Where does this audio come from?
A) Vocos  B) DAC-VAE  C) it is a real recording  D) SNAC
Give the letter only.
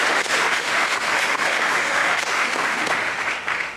B